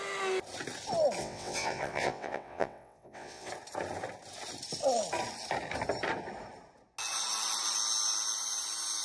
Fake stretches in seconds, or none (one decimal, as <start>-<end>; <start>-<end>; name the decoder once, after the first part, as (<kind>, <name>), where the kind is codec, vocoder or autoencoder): 1.2-3.5 (vocoder, WaveNeXt)